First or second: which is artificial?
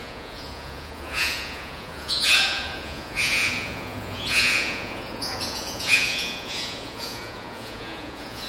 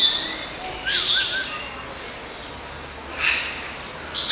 first